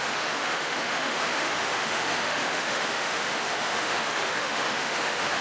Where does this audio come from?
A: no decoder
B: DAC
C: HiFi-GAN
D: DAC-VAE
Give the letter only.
D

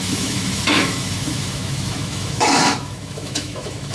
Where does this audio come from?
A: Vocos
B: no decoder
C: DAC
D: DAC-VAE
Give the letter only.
D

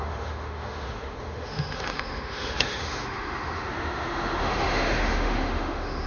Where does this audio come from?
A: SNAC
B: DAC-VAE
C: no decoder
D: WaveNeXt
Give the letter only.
B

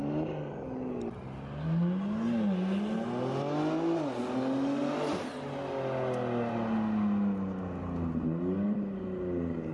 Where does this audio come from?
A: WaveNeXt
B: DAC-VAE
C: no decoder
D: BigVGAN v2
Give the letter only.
C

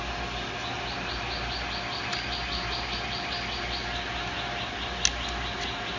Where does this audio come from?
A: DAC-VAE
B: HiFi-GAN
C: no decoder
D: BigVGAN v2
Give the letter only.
C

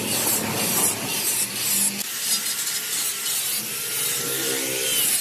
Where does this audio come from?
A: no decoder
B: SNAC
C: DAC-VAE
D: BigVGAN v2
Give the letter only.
A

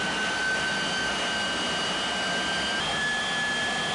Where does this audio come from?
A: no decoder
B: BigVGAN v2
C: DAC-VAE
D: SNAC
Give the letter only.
A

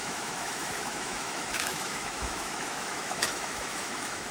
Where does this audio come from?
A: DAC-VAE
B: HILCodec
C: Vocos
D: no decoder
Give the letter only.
A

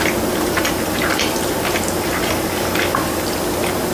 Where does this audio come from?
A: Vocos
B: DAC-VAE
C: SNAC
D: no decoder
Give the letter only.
D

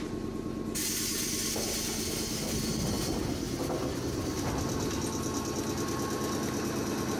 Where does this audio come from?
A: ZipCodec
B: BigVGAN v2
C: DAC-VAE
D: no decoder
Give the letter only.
D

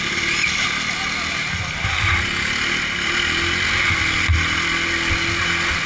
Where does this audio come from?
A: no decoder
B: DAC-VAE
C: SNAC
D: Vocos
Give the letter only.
A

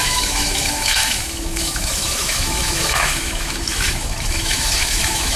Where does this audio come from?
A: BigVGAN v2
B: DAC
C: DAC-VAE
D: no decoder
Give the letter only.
C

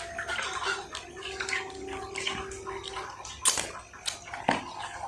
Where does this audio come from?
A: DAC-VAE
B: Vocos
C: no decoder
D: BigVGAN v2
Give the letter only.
C